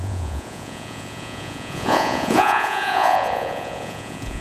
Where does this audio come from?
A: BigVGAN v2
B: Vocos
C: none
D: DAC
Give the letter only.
B